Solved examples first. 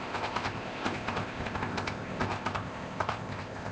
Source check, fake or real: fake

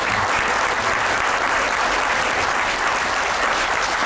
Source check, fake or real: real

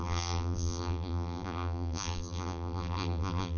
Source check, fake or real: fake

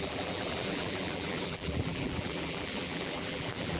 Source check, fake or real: fake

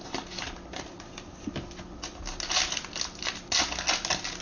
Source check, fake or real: real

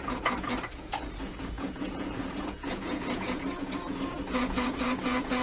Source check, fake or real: fake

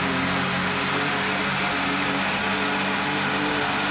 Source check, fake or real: real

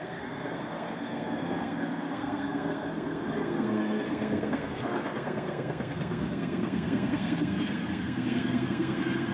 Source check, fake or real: fake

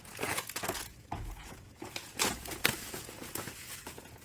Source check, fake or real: fake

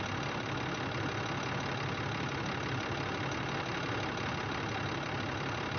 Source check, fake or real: real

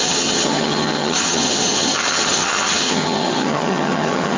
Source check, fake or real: fake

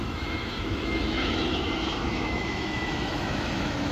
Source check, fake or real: fake